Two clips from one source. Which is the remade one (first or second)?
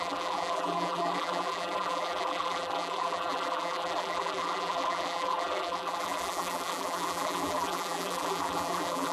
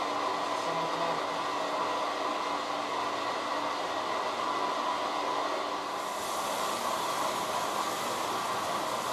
first